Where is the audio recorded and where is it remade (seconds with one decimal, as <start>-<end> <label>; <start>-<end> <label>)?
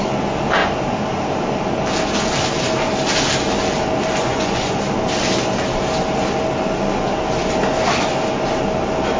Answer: 0.0-4.2 recorded; 4.2-4.8 remade; 4.8-9.2 recorded